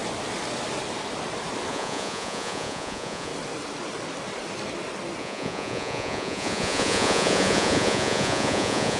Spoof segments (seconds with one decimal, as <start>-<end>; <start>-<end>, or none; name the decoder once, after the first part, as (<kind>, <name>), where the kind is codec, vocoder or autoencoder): 1.7-3.3 (vocoder, Vocos); 5.2-9.0